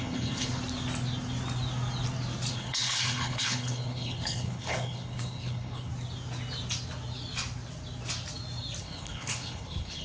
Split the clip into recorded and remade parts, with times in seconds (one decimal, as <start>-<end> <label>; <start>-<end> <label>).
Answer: 0.0-0.6 remade; 0.6-2.5 recorded; 2.5-5.9 remade; 5.9-8.8 recorded; 8.8-10.0 remade